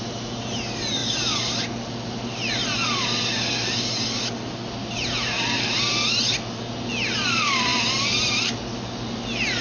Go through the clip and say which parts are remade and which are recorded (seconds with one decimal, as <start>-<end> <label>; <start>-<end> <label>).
0.0-9.6 recorded